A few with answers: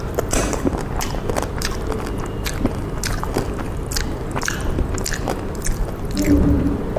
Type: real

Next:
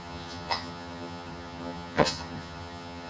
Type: fake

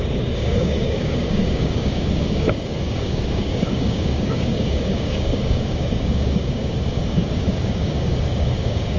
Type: fake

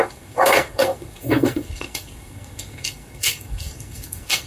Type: fake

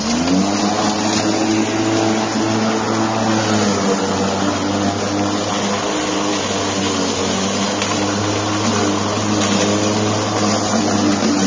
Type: real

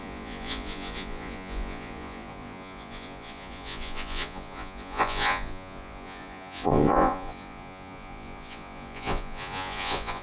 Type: fake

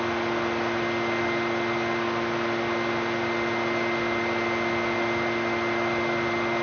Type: real